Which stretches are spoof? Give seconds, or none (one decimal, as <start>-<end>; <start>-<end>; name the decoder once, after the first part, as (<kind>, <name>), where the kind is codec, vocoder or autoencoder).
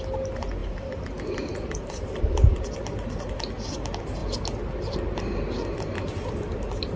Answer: 0.6-2.6 (vocoder, BigVGAN v2)